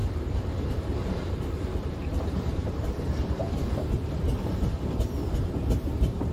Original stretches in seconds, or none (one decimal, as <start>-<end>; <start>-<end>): 0.6-1.0; 2.8-3.4; 4.5-6.3